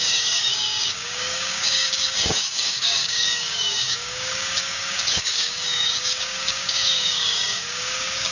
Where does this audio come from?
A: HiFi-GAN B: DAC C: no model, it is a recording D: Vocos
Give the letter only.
B